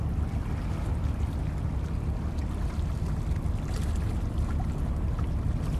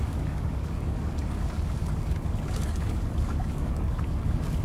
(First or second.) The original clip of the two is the first